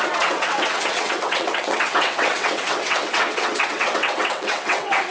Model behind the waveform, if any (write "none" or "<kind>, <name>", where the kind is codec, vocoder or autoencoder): vocoder, WaveNeXt